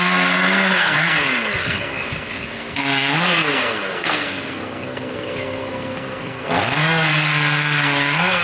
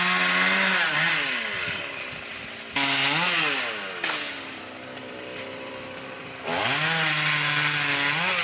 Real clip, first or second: second